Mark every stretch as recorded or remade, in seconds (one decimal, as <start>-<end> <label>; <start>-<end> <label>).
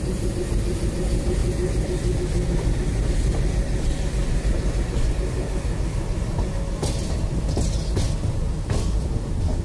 0.0-9.6 recorded